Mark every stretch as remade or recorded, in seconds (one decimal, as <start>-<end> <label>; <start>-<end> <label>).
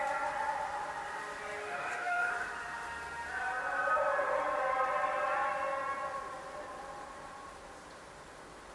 0.0-1.6 recorded; 1.6-2.3 remade; 2.3-8.7 recorded